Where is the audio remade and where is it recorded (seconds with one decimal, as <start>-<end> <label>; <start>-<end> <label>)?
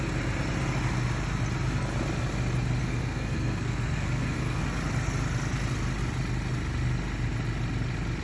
0.0-2.8 recorded; 2.8-4.6 remade; 4.6-8.2 recorded